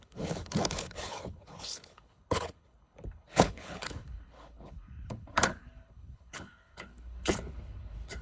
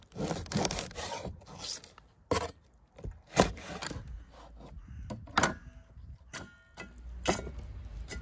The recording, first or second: second